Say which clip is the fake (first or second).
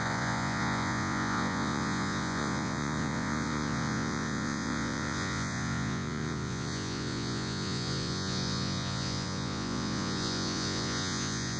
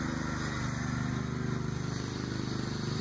first